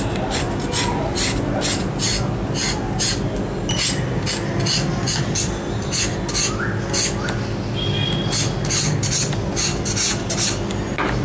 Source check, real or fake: real